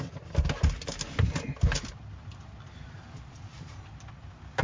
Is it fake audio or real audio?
real